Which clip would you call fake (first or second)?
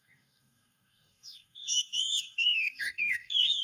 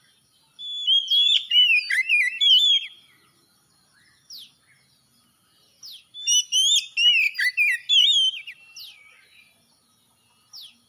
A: first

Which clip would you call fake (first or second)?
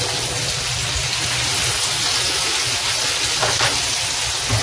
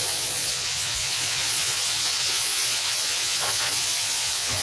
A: second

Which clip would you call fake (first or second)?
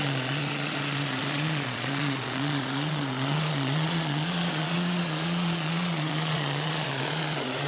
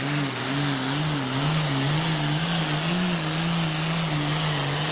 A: first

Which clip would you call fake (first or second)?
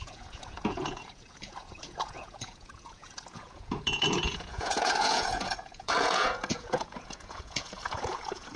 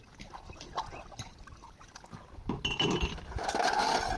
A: first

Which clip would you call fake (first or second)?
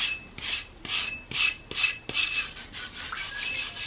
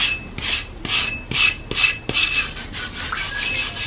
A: first